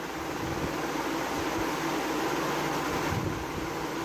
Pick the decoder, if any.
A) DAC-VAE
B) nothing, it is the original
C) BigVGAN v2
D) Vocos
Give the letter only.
B